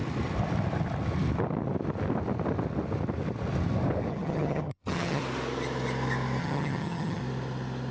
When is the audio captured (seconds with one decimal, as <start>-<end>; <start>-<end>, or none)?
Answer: 0.0-4.1; 5.2-6.4; 7.2-7.9